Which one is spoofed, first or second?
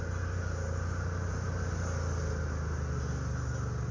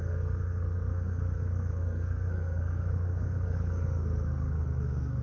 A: second